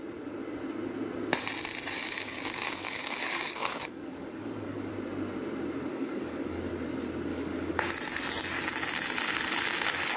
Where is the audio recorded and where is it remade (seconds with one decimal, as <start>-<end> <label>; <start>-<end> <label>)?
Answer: 0.0-2.0 recorded; 2.0-4.9 remade; 4.9-5.9 recorded; 5.9-6.7 remade; 6.7-7.3 recorded; 7.3-7.9 remade; 7.9-10.2 recorded

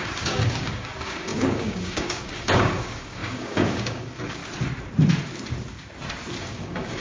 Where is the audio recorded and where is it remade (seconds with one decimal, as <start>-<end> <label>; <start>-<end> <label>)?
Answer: 0.0-4.4 remade; 4.4-6.4 recorded; 6.4-7.0 remade

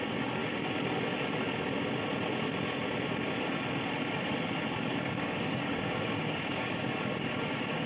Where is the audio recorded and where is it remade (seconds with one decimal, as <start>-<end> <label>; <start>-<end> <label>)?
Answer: 0.0-0.4 remade; 0.4-4.9 recorded; 4.9-7.9 remade